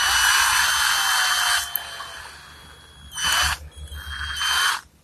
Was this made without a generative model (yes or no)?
yes